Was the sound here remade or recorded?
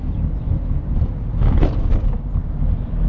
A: recorded